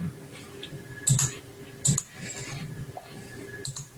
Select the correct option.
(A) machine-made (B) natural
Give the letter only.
B